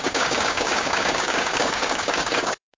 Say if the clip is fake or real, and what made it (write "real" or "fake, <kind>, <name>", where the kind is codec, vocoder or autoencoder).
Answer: fake, codec, DAC